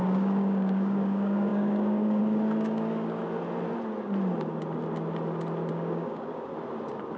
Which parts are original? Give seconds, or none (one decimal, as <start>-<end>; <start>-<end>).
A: 3.2-5.7; 6.5-7.2